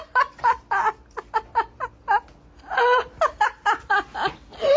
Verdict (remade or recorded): recorded